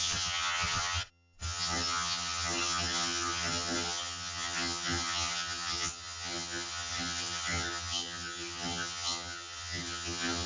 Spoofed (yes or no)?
yes